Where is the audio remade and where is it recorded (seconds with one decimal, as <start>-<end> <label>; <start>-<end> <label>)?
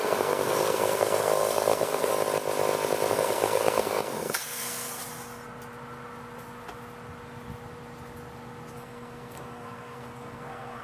0.0-2.1 remade; 2.1-3.1 recorded; 3.1-5.0 remade; 5.0-8.7 recorded; 8.7-10.8 remade